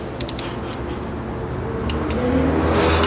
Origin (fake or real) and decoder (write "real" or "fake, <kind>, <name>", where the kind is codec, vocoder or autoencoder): real